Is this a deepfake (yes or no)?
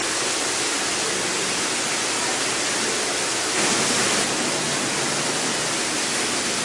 no